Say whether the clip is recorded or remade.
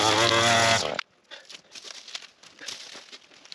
recorded